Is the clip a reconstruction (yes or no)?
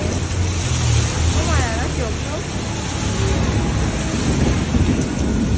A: no